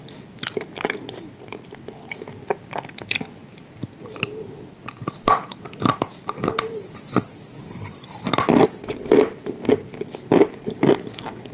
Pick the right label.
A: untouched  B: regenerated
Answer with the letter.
A